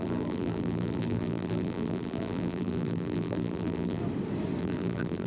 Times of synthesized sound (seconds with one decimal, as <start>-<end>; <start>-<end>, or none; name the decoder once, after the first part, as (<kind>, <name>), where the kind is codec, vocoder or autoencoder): 0.0-4.0 (vocoder, BigVGAN v2); 4.6-5.3